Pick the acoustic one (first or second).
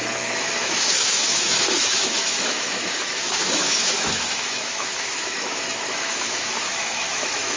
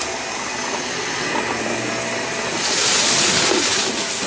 second